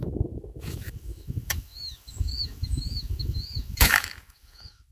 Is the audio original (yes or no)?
no